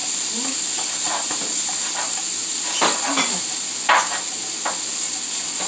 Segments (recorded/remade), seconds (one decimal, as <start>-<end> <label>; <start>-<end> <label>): 0.0-3.4 remade; 3.4-5.7 recorded